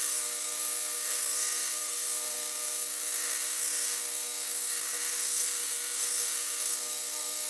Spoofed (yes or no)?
yes